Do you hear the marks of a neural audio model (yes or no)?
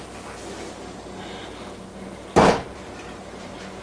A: no